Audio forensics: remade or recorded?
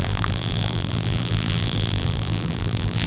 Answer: remade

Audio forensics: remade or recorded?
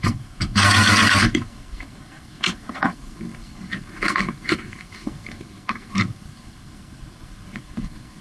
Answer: remade